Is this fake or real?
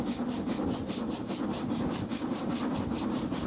real